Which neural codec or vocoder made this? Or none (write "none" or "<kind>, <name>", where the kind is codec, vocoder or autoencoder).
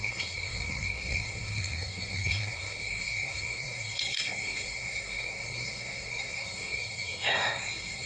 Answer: codec, SNAC